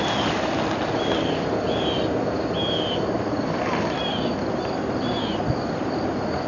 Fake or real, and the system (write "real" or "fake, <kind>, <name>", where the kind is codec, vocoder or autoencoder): real